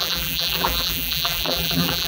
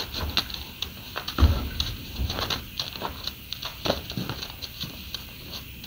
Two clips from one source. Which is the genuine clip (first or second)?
second